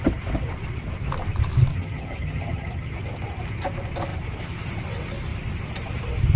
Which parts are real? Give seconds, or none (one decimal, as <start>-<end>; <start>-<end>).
0.0-1.7; 2.9-6.4